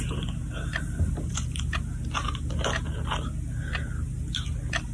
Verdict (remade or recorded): recorded